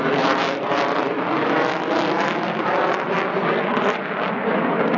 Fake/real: real